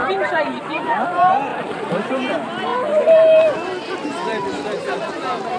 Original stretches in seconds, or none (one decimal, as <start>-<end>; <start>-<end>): 1.1-1.5; 2.3-2.7; 5.1-5.6